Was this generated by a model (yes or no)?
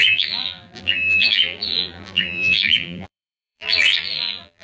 yes